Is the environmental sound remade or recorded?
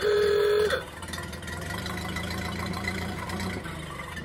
remade